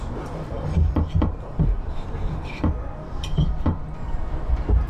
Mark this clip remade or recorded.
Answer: remade